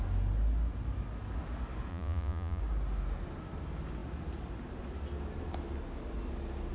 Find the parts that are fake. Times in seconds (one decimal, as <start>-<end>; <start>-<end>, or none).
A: 1.9-2.6